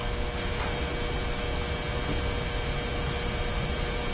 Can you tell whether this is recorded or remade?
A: recorded